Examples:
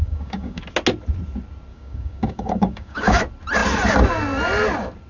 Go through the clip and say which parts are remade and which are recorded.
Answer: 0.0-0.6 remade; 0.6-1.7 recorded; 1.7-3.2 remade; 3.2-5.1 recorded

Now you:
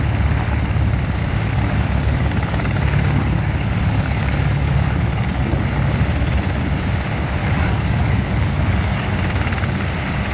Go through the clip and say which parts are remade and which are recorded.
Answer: 0.0-1.2 recorded; 1.2-5.6 remade; 5.6-7.4 recorded; 7.4-9.1 remade; 9.1-10.3 recorded

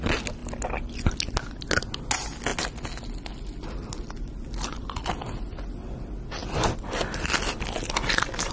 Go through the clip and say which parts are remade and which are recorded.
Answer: 0.0-8.5 recorded

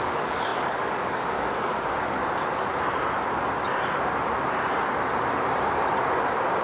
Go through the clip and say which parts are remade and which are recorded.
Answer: 0.0-2.2 remade; 2.2-6.6 recorded